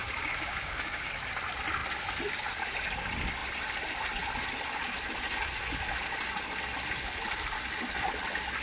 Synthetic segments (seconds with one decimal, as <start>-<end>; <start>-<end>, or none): 0.0-1.1